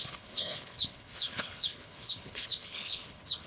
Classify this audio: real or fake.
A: fake